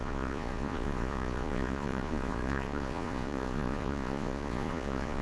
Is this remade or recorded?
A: remade